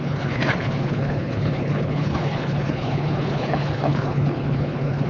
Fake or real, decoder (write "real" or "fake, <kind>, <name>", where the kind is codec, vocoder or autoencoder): fake, codec, HILCodec